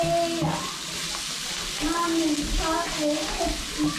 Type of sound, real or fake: real